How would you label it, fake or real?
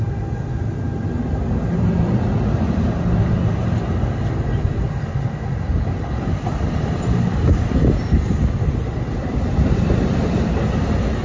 real